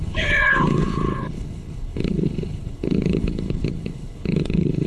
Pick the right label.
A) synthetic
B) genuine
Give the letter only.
A